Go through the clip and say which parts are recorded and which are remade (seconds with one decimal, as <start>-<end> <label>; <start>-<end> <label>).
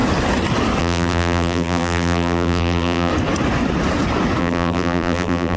0.0-0.8 recorded; 0.8-3.1 remade; 3.1-4.4 recorded; 4.4-5.6 remade